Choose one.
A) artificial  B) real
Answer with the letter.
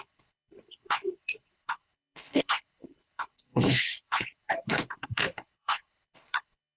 A